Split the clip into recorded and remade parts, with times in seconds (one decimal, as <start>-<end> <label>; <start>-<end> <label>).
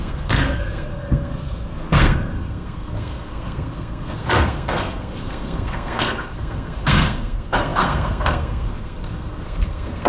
0.0-10.1 remade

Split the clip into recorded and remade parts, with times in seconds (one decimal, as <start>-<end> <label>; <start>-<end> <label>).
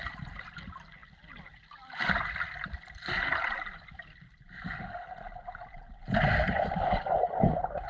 0.0-7.9 recorded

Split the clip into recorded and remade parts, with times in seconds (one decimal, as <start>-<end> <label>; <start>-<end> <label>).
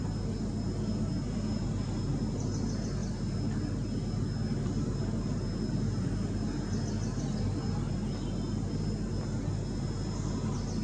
0.0-10.8 recorded